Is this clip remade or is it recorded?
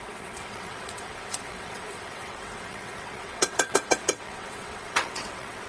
remade